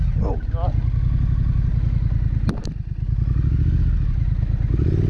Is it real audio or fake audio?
real